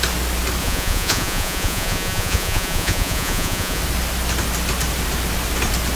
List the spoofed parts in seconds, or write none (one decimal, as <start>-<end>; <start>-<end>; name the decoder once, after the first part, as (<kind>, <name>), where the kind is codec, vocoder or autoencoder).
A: 0.6-3.8 (vocoder, Vocos)

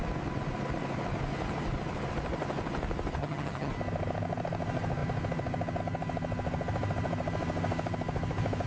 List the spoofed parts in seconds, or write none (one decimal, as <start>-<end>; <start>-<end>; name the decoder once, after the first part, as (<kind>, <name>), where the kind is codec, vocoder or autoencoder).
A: 3.2-3.7 (vocoder, HiFi-GAN)

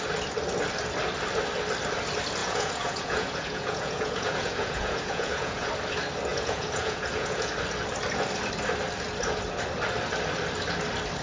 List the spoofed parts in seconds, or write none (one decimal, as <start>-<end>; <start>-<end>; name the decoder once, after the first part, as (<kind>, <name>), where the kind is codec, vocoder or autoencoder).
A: 2.4-5.7 (vocoder, Vocos); 6.3-7.5

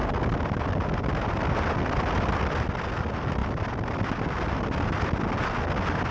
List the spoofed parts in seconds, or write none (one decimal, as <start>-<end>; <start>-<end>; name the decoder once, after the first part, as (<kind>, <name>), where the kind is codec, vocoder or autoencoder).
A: none

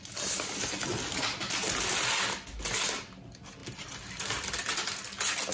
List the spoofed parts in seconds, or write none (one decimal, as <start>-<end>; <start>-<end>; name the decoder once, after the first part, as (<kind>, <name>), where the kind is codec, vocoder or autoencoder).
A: none

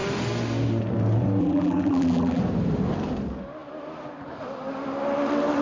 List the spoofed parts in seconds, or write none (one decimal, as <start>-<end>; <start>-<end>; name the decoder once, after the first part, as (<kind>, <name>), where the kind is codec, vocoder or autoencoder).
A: 1.4-2.4 (vocoder, BigVGAN v2)

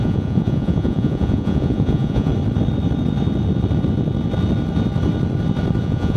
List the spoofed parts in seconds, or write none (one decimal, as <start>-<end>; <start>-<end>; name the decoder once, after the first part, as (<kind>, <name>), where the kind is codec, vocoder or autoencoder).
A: 0.0-2.3 (vocoder, Vocos); 5.8-6.2